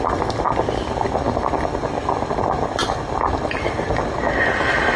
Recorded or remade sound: recorded